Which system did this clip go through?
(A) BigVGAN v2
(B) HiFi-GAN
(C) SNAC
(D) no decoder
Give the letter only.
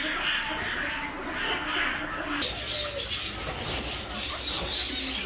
D